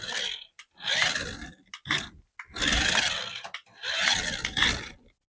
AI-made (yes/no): no